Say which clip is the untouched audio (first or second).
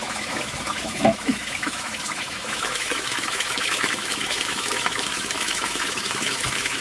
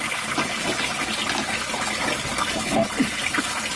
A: second